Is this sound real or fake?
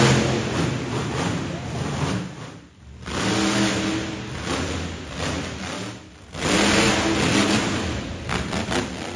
real